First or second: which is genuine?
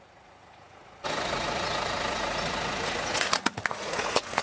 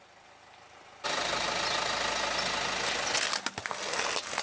second